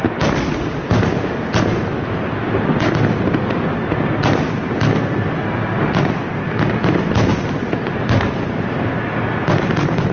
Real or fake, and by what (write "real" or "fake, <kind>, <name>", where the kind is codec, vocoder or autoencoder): real